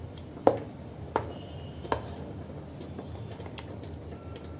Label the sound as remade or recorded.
recorded